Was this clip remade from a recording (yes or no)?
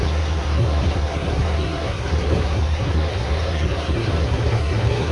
yes